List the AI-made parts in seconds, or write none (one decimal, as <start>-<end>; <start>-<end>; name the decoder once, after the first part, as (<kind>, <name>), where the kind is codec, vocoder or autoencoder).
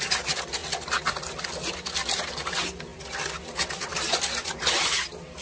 none